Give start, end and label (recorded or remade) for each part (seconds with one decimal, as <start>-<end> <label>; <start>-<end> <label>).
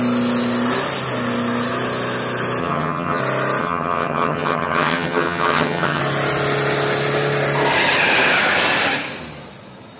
0.0-2.6 recorded; 2.6-3.2 remade; 3.2-3.6 recorded; 3.6-6.0 remade; 6.0-10.0 recorded